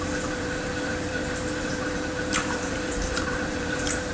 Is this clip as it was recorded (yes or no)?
no